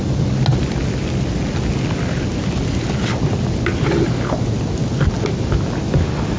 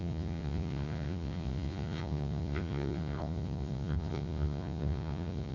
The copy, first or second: second